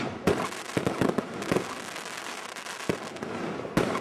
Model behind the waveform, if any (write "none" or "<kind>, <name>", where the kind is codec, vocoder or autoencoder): none